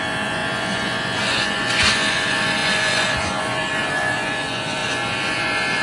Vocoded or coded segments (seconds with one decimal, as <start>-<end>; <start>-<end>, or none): 0.0-5.8